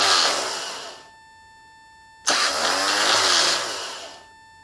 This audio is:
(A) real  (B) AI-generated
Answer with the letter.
A